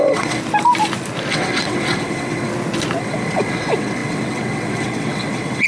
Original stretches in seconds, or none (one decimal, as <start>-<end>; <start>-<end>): 0.4-1.3; 2.5-3.0